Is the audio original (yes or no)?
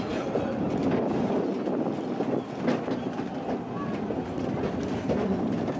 yes